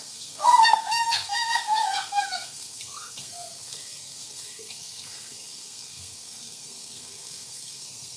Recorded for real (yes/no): no